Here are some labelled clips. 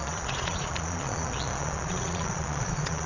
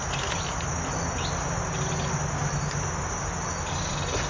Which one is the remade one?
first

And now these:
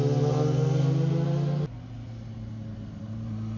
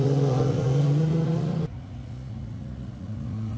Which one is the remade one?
second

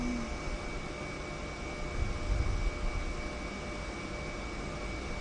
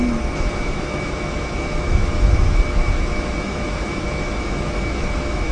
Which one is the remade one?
second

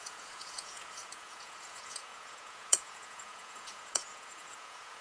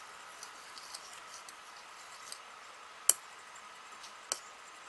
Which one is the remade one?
first